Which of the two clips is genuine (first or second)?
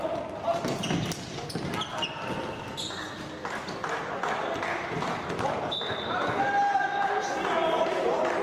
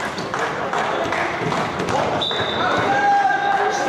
first